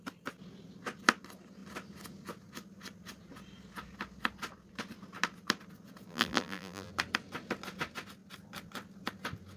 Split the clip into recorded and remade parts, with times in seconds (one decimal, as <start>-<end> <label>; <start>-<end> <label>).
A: 0.0-6.1 recorded; 6.1-6.9 remade; 6.9-9.6 recorded